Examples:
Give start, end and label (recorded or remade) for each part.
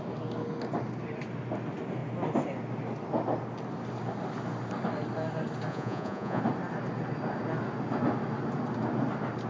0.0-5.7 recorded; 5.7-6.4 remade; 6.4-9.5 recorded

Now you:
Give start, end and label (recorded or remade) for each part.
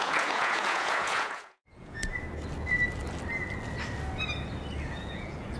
0.0-2.1 remade; 2.1-4.9 recorded; 4.9-5.6 remade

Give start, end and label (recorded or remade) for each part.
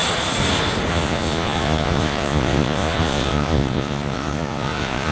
0.0-0.9 recorded; 0.9-5.1 remade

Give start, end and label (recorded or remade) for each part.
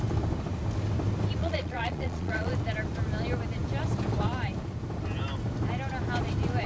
0.0-1.4 recorded; 1.4-2.5 remade; 2.5-6.7 recorded